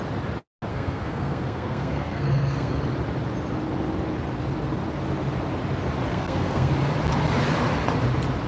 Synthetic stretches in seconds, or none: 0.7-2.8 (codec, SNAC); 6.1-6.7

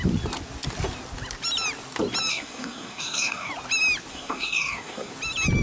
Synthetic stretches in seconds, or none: 2.3-3.5 (codec, SNAC); 4.1-5.1

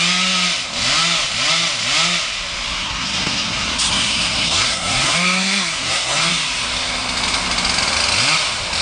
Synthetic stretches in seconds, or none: 2.7-6.3 (codec, SNAC)

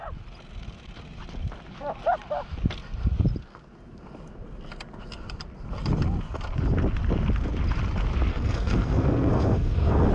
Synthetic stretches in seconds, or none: 8.3-10.1 (codec, SNAC)

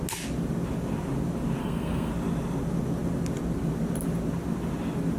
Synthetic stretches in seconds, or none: 1.6-2.1 (codec, SNAC)

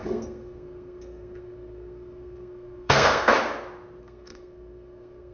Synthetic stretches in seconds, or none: 0.0-3.3 (codec, SNAC); 4.0-5.3

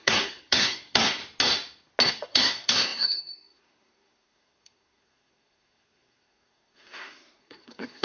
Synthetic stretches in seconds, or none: 0.0-1.2 (codec, SNAC); 2.1-8.0